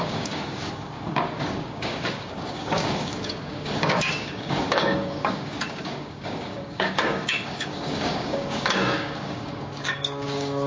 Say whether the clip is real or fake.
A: fake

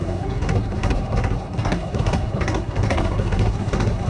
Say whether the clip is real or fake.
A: fake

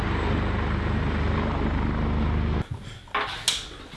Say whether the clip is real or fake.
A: real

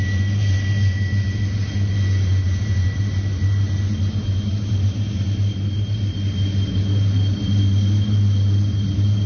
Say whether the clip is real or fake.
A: real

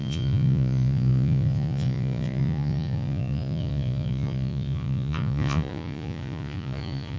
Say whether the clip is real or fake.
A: fake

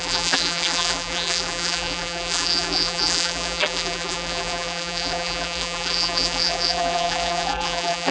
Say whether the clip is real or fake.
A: fake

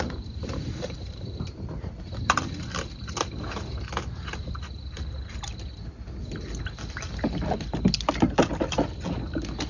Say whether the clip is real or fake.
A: real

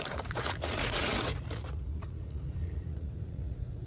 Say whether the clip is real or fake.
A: fake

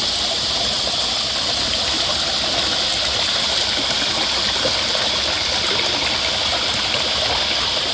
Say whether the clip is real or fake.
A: real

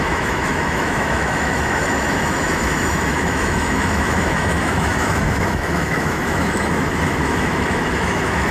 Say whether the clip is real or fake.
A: fake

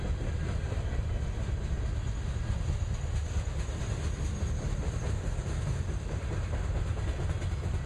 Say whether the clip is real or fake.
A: real